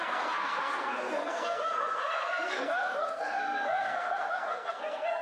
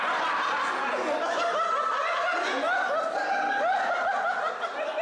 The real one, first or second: second